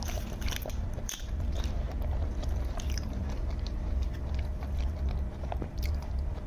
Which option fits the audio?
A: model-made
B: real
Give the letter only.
A